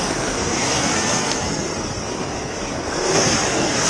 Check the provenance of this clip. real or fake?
fake